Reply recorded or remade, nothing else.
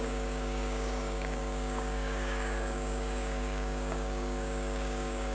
remade